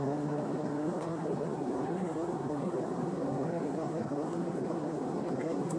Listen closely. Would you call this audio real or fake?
fake